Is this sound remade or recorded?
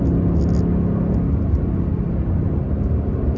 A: recorded